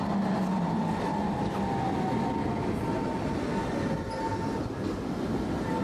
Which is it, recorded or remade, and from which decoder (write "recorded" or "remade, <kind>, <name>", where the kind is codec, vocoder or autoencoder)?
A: recorded